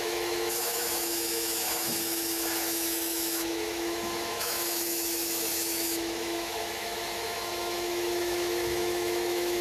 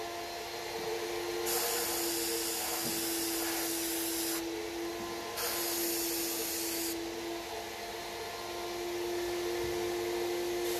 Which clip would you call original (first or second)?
second